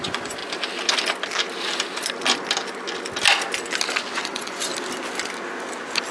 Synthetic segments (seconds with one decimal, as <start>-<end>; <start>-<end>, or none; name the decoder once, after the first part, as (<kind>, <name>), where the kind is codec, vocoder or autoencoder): 0.0-0.4 (vocoder, Vocos); 4.1-4.7